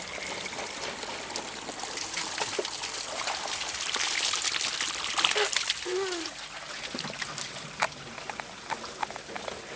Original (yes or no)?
yes